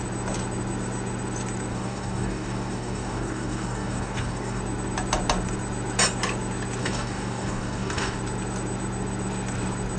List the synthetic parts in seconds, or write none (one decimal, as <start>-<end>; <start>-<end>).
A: 1.7-4.6; 6.8-8.2